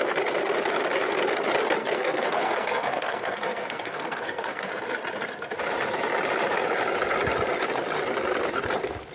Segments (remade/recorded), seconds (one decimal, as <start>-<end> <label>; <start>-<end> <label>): 0.0-1.8 recorded; 1.8-4.7 remade; 4.7-9.1 recorded